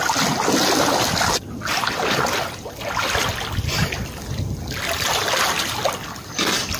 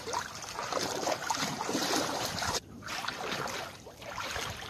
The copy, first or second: second